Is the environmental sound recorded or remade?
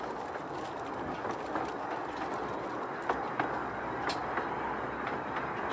recorded